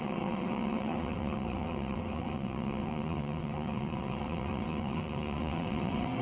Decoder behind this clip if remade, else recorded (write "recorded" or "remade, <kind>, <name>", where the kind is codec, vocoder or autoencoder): remade, vocoder, WaveNeXt